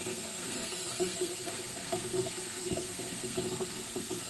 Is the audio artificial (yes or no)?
yes